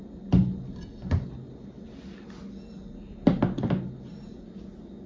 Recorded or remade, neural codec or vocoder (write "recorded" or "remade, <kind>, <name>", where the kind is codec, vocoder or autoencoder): recorded